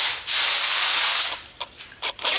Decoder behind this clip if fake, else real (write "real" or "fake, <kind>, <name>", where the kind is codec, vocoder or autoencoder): real